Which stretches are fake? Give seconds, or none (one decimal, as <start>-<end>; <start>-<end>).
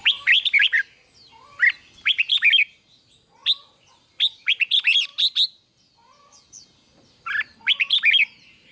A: none